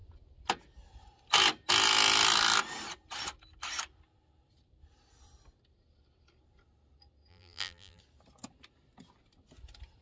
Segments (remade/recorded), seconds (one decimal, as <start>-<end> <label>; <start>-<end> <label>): 0.0-7.3 recorded; 7.3-8.0 remade; 8.0-10.0 recorded